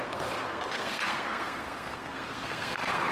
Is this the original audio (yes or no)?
no